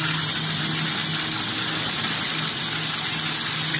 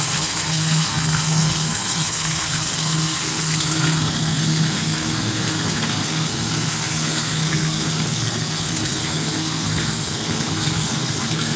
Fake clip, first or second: second